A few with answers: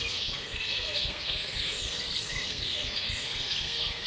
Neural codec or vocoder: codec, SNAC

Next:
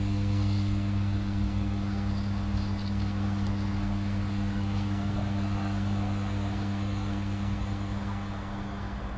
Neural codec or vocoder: codec, SNAC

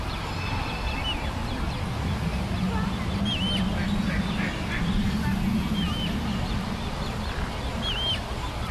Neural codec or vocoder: none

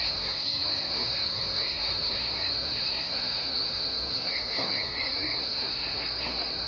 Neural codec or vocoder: codec, SNAC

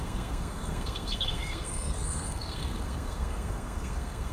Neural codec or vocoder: codec, SNAC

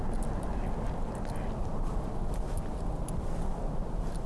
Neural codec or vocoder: none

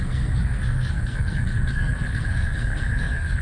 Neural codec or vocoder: codec, SNAC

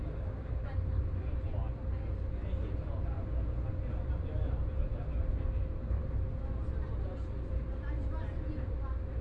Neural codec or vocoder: none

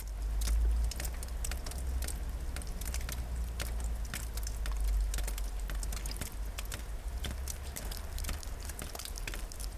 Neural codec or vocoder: none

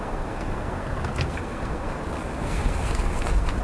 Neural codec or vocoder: codec, SNAC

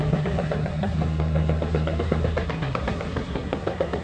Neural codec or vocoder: codec, SNAC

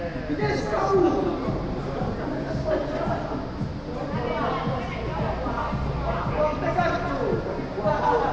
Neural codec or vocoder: none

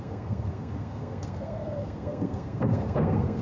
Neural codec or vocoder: codec, SNAC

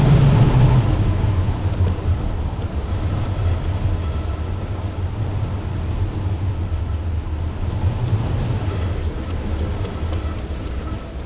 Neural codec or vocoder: none